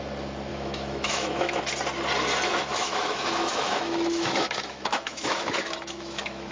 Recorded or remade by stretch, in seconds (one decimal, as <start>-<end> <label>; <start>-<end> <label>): 0.0-0.5 recorded; 0.5-1.6 remade; 1.6-2.5 recorded; 2.5-6.5 remade